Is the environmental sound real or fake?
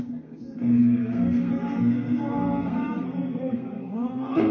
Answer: fake